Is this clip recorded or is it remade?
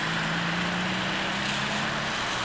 recorded